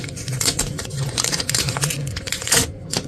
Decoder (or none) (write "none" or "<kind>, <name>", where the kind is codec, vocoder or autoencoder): vocoder, Vocos